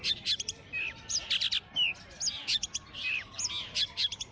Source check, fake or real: real